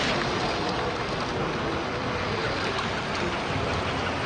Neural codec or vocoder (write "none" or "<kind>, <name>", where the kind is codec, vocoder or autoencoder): none